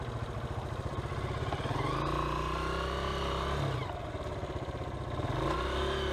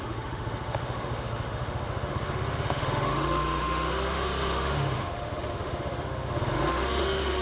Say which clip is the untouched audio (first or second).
first